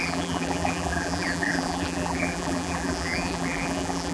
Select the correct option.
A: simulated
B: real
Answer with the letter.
A